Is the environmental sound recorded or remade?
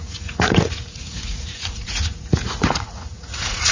remade